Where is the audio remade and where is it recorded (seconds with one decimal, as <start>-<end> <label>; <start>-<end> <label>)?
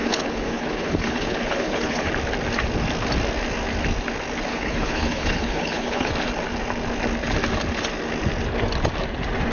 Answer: 0.0-2.1 remade; 2.1-4.5 recorded; 4.5-6.1 remade; 6.1-9.5 recorded